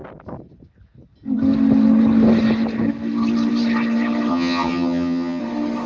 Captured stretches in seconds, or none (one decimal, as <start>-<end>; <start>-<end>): 0.0-4.3; 5.4-5.9